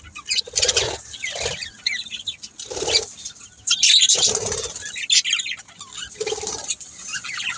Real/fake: real